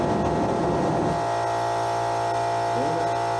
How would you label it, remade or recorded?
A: recorded